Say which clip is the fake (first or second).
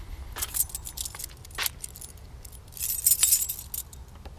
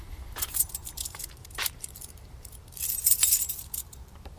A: second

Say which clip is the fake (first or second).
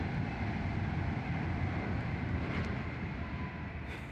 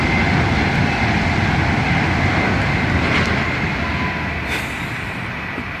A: first